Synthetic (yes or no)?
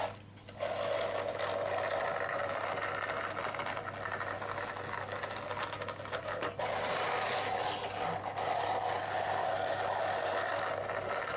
no